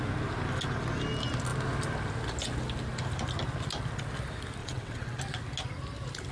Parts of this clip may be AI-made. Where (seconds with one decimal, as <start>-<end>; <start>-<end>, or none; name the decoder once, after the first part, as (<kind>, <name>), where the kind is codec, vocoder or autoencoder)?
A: 4.6-5.2 (vocoder, WaveNeXt)

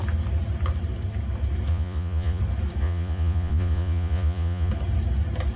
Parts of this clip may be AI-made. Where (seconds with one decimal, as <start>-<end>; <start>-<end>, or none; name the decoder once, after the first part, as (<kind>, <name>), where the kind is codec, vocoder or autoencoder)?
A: 1.7-2.4 (vocoder, Vocos); 2.8-4.7

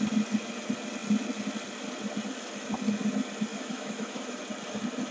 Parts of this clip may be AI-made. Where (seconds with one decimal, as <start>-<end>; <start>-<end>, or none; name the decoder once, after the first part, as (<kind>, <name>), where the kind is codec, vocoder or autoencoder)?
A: 3.5-4.4 (autoencoder, DAC-VAE)

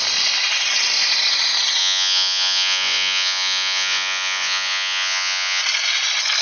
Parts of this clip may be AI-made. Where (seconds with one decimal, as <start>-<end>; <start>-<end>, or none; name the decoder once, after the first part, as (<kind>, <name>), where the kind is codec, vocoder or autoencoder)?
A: 1.8-5.6 (vocoder, Vocos)